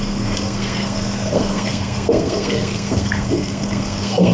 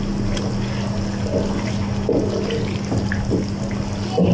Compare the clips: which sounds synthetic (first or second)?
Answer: first